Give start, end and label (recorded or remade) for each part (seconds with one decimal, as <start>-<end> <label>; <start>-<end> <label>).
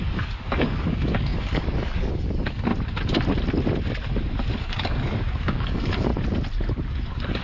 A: 0.0-2.7 remade; 2.7-4.6 recorded; 4.6-6.1 remade; 6.1-6.7 recorded; 6.7-7.4 remade